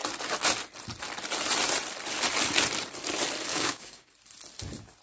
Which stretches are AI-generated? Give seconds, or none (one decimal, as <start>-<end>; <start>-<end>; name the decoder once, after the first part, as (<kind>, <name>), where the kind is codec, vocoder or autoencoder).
3.5-4.1 (codec, DAC)